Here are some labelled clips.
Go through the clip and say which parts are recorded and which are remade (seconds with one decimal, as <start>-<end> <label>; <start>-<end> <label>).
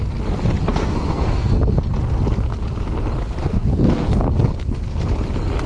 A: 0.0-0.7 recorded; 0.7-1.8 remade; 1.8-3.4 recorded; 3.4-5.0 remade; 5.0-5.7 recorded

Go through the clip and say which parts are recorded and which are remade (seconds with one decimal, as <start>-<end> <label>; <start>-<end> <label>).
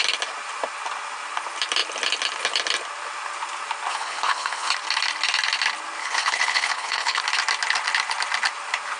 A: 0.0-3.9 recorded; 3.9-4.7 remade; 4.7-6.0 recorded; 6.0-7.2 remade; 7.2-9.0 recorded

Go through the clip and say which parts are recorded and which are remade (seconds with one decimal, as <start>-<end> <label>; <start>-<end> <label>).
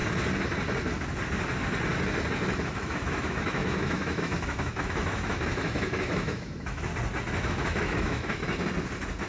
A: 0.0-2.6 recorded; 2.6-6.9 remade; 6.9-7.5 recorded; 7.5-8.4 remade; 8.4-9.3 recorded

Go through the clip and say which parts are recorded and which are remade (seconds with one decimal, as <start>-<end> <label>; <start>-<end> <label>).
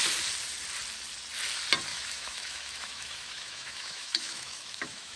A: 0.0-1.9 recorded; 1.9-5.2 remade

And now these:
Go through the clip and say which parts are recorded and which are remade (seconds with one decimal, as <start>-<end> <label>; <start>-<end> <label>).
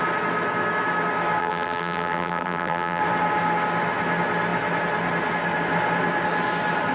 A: 0.0-1.4 recorded; 1.4-3.0 remade; 3.0-6.9 recorded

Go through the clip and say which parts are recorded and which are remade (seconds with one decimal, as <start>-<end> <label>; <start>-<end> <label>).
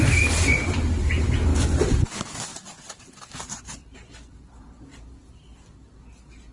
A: 0.0-6.5 recorded